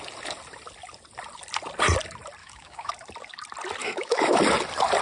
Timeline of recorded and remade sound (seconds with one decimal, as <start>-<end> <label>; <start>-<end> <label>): 0.0-2.4 recorded; 2.4-2.9 remade; 2.9-3.8 recorded; 3.8-4.4 remade; 4.4-5.0 recorded